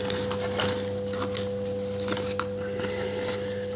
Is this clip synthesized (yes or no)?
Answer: no